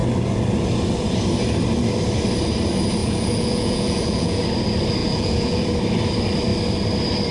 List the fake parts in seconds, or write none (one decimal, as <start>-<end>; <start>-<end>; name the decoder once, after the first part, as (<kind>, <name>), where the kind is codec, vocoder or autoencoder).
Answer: 3.0-4.4 (vocoder, Vocos); 5.0-5.6